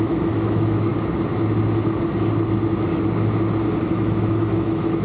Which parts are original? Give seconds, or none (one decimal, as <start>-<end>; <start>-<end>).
0.9-3.9